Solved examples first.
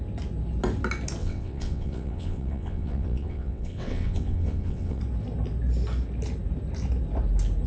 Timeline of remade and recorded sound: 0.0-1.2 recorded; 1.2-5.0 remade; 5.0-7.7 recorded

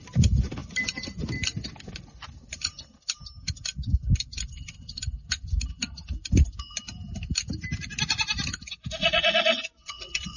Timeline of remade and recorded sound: 0.0-9.0 recorded; 9.0-10.4 remade

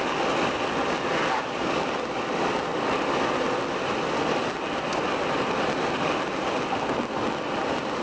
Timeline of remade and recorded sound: 0.0-8.0 recorded

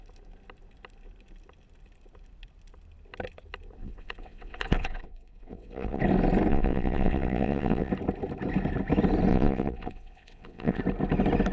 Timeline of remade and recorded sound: 0.0-3.8 recorded; 3.8-6.0 remade; 6.0-6.5 recorded; 6.5-7.9 remade; 7.9-9.3 recorded; 9.3-10.8 remade; 10.8-11.5 recorded

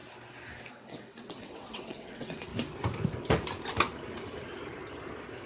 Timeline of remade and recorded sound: 0.0-0.7 recorded; 0.7-2.5 remade; 2.5-5.5 recorded